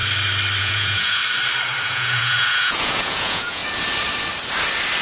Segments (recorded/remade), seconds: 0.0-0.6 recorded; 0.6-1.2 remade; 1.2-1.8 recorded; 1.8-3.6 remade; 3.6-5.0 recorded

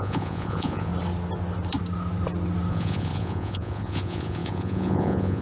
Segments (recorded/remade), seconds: 0.0-0.9 remade; 0.9-2.7 recorded; 2.7-5.4 remade

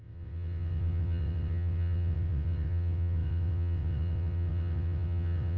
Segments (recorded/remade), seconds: 0.0-5.6 remade

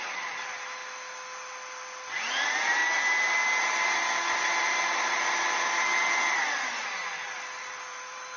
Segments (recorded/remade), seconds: 0.0-7.6 recorded; 7.6-8.4 remade

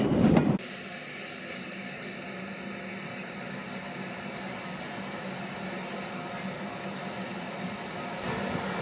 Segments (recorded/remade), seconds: 0.0-8.8 recorded